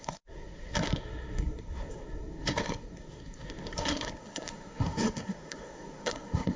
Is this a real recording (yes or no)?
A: no